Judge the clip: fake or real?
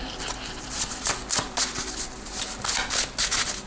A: real